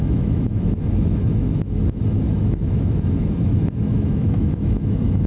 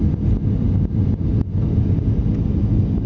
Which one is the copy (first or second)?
first